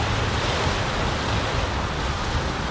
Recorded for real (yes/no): yes